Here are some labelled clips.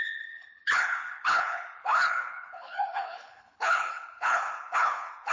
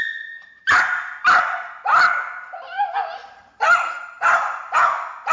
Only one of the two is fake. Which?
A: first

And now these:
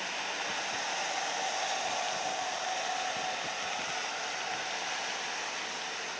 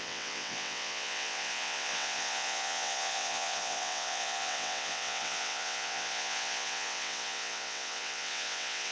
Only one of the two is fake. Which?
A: second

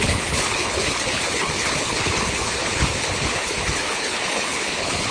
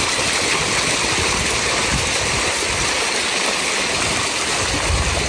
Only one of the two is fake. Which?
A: first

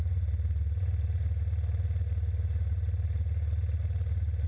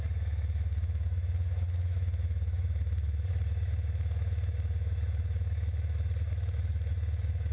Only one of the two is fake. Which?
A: second